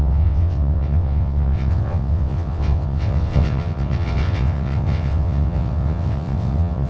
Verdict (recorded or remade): remade